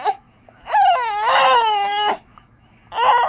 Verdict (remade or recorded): remade